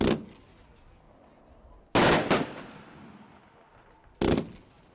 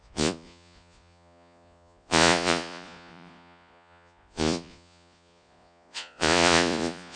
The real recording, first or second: first